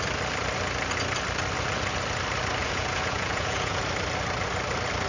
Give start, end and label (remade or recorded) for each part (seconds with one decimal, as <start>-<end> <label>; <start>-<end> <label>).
0.0-2.6 recorded; 2.6-3.8 remade; 3.8-5.1 recorded